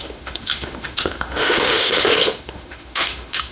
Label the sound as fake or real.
fake